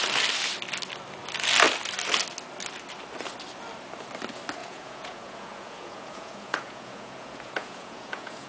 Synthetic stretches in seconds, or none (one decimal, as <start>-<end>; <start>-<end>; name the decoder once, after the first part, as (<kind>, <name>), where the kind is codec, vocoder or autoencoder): 4.6-8.5 (vocoder, Vocos)